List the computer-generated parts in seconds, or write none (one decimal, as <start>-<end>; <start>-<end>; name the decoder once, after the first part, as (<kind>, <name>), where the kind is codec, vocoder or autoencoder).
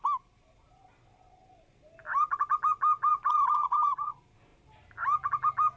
3.6-4.1 (vocoder, Vocos)